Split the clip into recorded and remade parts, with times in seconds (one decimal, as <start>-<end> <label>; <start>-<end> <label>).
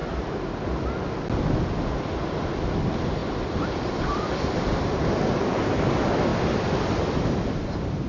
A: 0.0-8.1 recorded